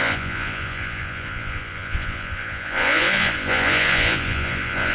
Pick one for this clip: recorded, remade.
remade